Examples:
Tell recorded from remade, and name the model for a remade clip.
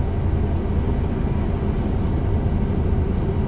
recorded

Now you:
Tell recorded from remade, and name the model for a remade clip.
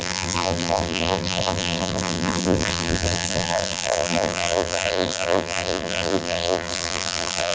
remade, vocoder, BigVGAN v2